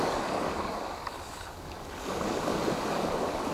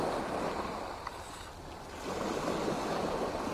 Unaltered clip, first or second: second